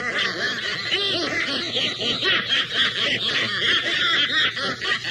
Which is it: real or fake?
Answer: real